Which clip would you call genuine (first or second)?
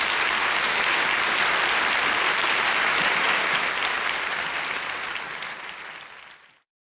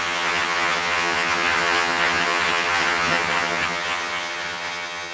first